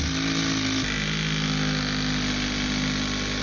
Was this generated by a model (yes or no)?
no